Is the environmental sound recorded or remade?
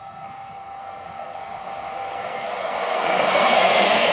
remade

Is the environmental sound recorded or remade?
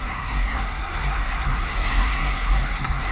remade